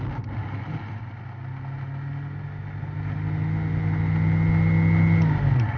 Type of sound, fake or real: real